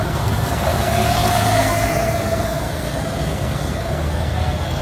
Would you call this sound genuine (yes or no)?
no